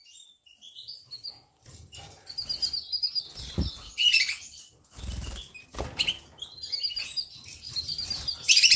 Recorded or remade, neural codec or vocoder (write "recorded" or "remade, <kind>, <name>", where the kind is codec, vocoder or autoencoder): recorded